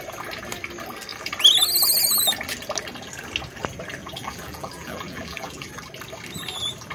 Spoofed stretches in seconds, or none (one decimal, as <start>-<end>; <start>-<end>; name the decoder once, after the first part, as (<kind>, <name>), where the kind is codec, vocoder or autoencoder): 4.0-5.7 (vocoder, BigVGAN v2)